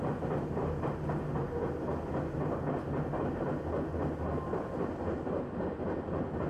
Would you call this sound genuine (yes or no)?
yes